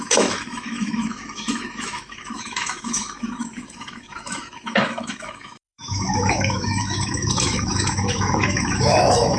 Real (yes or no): no